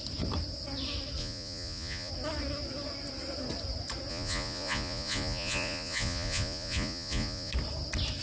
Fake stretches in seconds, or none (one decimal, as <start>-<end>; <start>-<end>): 1.2-2.1; 4.1-7.5